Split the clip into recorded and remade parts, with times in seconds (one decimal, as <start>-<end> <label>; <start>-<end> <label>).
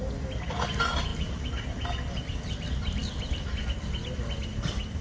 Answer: 0.0-5.0 recorded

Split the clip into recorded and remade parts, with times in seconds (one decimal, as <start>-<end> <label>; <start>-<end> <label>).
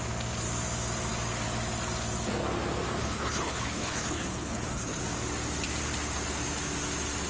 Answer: 0.0-3.0 recorded; 3.0-5.0 remade; 5.0-7.3 recorded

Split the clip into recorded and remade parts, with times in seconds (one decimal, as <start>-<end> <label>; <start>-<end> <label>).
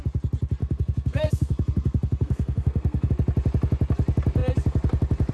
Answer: 0.0-0.6 recorded; 0.6-3.1 remade; 3.1-5.3 recorded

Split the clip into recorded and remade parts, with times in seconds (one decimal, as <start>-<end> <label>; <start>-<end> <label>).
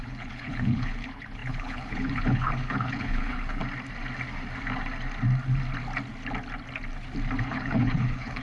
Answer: 0.0-3.6 remade; 3.6-7.4 recorded; 7.4-8.4 remade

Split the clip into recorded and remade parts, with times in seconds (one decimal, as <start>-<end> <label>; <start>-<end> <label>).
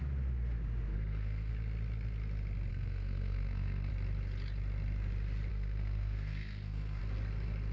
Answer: 0.0-0.9 recorded; 0.9-1.5 remade; 1.5-2.7 recorded; 2.7-3.9 remade; 3.9-5.5 recorded; 5.5-7.0 remade; 7.0-7.7 recorded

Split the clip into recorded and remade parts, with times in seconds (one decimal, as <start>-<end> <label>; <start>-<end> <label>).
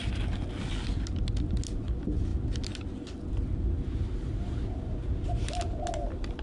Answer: 0.0-6.4 recorded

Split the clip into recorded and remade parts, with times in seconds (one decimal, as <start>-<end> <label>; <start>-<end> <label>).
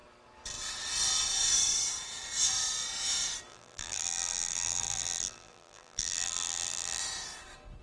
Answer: 0.0-3.5 recorded; 3.5-7.0 remade; 7.0-7.8 recorded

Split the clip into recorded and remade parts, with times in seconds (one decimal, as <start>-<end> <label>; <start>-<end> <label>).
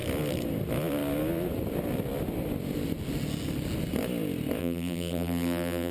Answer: 0.0-4.6 recorded; 4.6-5.9 remade